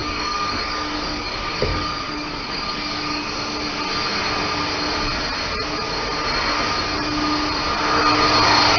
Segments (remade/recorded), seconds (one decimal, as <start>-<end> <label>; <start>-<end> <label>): 0.0-3.3 remade; 3.3-8.8 recorded